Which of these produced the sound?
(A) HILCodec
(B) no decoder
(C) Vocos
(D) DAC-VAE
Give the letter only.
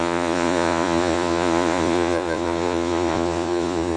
C